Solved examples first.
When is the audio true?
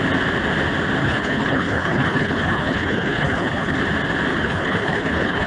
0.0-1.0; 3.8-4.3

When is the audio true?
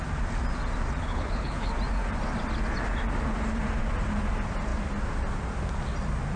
0.0-1.0; 1.7-6.4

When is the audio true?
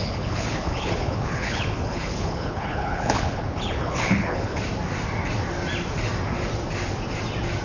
4.6-7.6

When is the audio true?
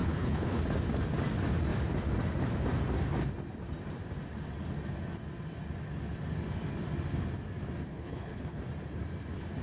0.6-7.9; 8.6-9.6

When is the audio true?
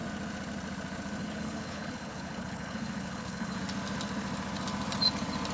0.0-1.2; 3.6-5.5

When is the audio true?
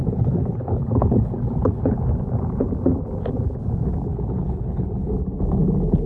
1.9-4.1; 5.1-6.1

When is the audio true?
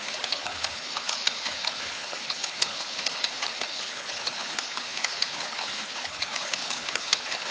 none